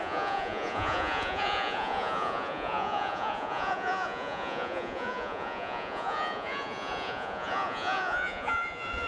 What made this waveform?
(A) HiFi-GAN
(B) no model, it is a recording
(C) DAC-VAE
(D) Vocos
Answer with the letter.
D